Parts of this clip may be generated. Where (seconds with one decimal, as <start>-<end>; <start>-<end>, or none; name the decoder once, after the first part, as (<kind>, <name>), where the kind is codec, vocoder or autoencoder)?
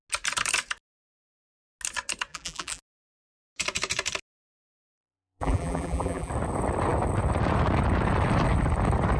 2.3-2.8 (vocoder, BigVGAN v2); 4.4-6.3